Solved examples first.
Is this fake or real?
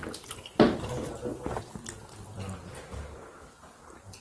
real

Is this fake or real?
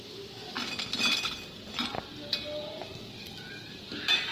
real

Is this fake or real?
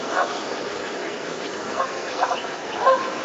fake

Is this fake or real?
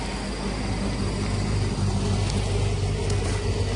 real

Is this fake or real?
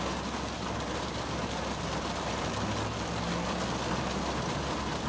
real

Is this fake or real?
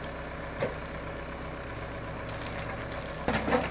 real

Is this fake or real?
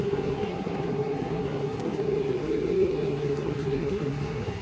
fake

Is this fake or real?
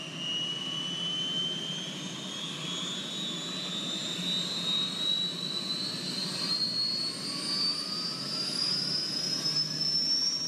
real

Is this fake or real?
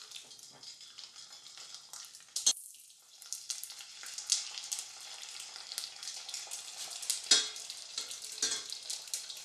real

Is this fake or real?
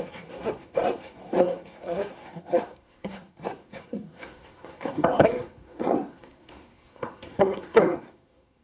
fake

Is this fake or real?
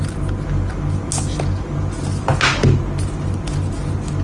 real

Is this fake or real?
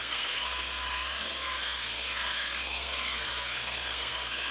fake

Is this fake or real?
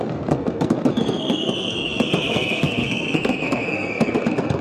fake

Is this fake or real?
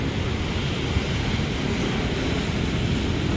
real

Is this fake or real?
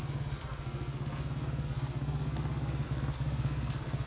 fake